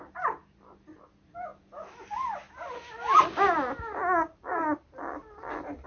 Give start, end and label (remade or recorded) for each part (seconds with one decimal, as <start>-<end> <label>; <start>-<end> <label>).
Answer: 0.0-5.9 recorded